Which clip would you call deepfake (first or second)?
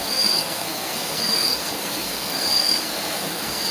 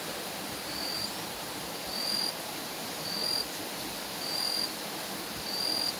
first